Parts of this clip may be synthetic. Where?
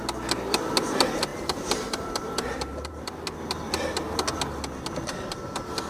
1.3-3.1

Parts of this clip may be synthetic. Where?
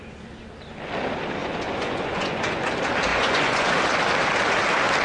1.4-2.7; 3.1-3.7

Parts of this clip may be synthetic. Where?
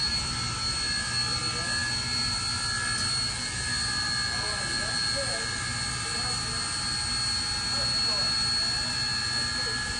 none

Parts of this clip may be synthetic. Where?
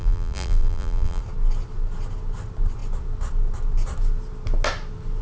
0.0-1.2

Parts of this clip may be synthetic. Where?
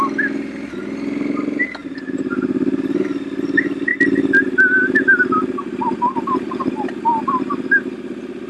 1.8-3.1